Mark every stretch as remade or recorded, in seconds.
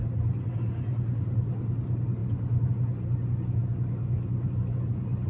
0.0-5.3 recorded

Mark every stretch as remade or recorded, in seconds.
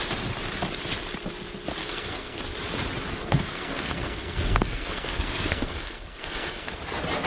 0.0-1.8 recorded; 1.8-2.4 remade; 2.4-3.2 recorded; 3.2-6.8 remade; 6.8-7.3 recorded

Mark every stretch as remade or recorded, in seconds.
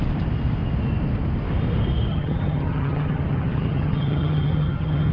0.0-2.1 recorded; 2.1-5.1 remade